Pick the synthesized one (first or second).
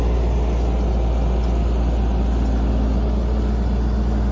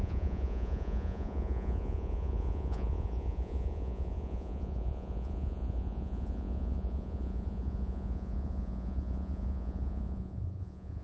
second